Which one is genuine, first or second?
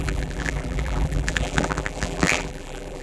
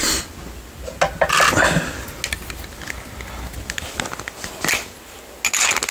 second